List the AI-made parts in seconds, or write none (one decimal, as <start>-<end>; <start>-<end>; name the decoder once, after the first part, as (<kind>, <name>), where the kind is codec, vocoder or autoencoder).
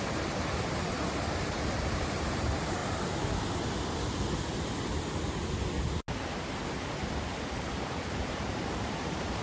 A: 0.0-2.8 (vocoder, BigVGAN v2); 7.4-9.4